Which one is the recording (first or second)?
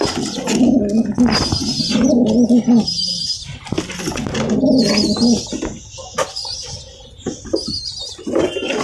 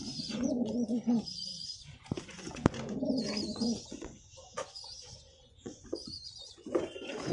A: first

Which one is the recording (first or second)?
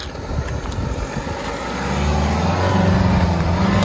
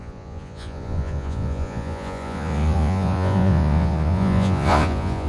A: first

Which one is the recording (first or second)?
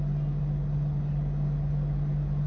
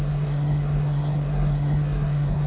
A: first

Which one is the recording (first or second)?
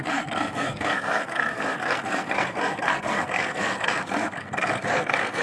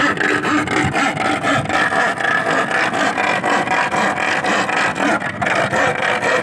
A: second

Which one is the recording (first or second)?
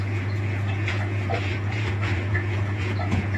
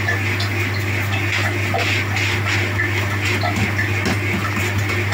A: second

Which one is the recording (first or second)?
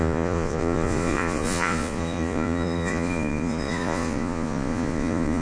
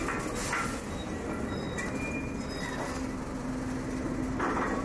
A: second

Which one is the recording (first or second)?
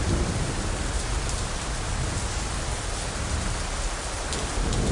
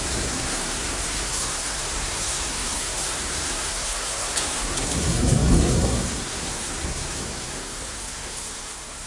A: first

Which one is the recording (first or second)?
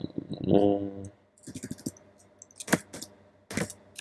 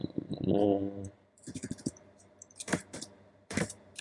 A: first